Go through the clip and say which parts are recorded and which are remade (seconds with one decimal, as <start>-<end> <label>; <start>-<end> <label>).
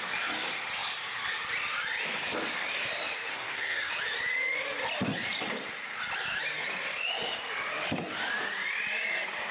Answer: 0.0-3.3 recorded; 3.3-3.9 remade; 3.9-9.5 recorded